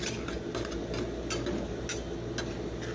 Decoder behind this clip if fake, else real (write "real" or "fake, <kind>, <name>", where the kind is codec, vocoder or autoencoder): real